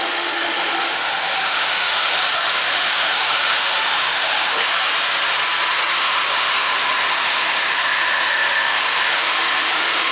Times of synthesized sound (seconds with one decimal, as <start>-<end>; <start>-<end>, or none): 0.0-4.9; 6.0-10.1